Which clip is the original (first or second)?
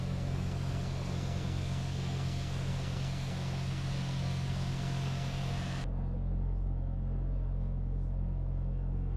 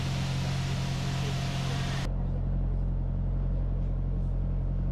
second